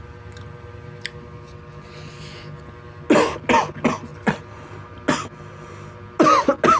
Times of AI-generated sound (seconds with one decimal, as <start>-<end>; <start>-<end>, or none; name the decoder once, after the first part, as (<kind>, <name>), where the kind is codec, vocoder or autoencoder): none